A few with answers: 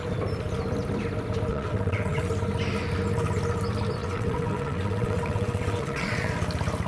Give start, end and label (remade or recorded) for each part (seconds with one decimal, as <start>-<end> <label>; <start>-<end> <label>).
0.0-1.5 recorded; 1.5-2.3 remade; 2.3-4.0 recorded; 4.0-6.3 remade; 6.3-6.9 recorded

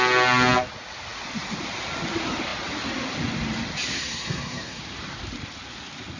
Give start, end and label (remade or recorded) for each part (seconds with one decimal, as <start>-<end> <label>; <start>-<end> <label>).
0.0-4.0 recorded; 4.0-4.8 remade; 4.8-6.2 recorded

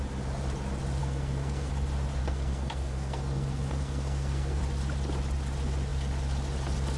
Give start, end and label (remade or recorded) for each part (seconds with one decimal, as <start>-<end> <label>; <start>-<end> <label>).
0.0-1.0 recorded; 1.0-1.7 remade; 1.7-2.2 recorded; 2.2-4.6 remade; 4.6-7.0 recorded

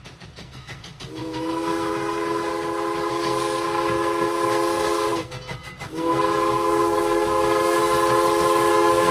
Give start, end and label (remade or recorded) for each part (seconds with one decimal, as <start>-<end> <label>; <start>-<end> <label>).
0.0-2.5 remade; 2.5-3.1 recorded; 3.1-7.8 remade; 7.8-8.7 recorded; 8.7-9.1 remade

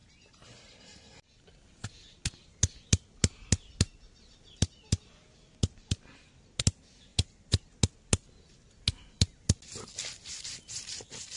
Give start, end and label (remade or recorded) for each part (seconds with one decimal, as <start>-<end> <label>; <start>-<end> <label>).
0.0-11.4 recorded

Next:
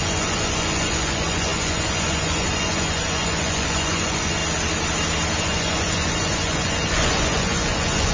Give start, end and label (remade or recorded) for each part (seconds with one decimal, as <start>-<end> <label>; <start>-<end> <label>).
0.0-4.4 remade; 4.4-5.4 recorded; 5.4-8.1 remade

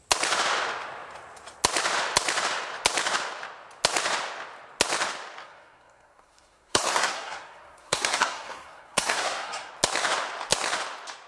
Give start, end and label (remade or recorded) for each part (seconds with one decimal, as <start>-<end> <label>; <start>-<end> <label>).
0.0-5.4 recorded; 5.4-9.7 remade; 9.7-11.3 recorded